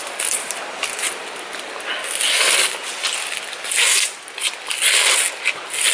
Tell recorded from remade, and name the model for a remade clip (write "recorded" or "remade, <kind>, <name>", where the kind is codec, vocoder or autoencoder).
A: recorded